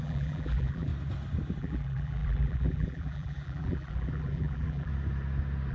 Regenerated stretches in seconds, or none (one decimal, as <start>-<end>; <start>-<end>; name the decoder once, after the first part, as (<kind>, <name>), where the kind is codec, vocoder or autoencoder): 0.0-0.9 (vocoder, BigVGAN v2); 1.6-4.9